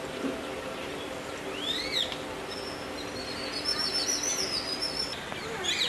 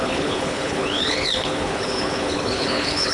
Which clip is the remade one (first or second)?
second